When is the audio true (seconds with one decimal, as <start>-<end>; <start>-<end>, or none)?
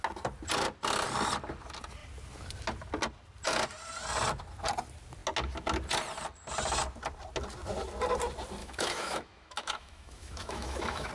0.0-8.6